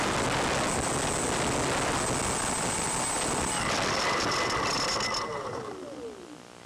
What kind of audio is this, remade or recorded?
recorded